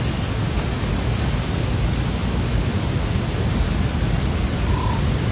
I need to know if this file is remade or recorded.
recorded